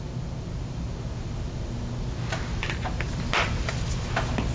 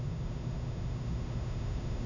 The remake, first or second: second